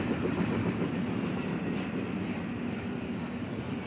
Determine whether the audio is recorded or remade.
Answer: recorded